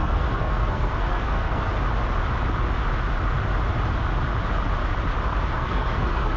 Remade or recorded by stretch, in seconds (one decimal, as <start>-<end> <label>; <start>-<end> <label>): 0.0-1.7 remade; 1.7-5.5 recorded; 5.5-6.4 remade